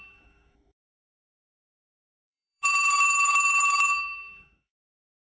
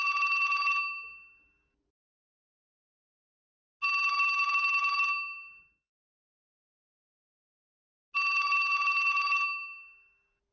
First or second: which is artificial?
first